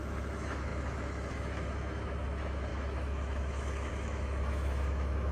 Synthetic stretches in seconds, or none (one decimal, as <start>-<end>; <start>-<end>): 0.0-5.3